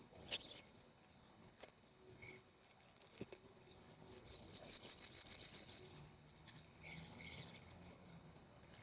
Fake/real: fake